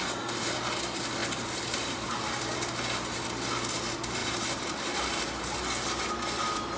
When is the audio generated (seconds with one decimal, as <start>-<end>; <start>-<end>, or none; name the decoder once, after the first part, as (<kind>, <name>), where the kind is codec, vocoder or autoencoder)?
1.2-2.4 (vocoder, BigVGAN v2); 4.2-5.6